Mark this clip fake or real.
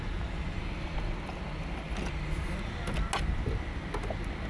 real